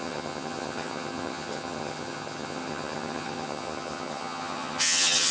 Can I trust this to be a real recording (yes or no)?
no